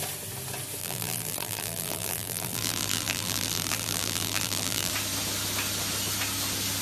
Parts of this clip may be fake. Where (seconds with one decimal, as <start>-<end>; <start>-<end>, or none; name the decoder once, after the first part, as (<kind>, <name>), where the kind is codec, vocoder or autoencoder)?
0.8-4.9 (vocoder, BigVGAN v2)